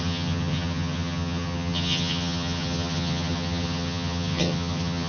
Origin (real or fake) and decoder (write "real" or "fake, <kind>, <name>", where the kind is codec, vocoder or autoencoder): fake, vocoder, HiFi-GAN